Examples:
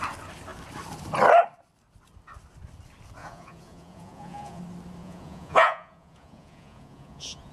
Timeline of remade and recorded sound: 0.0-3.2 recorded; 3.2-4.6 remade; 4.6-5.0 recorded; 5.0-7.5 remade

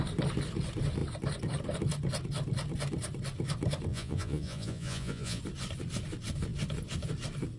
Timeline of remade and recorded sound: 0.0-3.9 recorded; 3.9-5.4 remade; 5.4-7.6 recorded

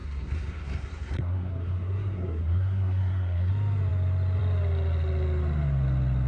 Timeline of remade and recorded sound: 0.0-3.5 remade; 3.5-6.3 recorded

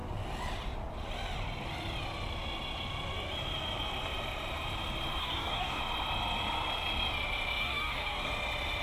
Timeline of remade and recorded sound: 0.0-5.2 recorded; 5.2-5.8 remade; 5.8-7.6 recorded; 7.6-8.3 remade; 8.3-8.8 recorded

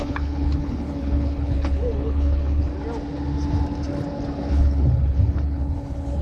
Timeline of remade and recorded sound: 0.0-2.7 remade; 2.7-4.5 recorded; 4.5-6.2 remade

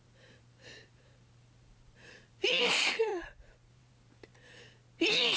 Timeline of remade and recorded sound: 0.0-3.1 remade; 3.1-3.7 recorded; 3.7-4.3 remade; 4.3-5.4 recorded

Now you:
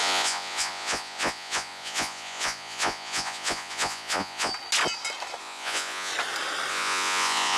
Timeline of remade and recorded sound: 0.0-4.5 remade; 4.5-5.4 recorded; 5.4-6.1 remade; 6.1-6.7 recorded; 6.7-7.6 remade

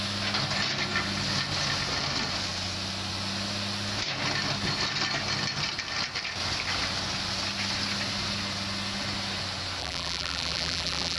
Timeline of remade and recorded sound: 0.0-9.8 recorded; 9.8-11.2 remade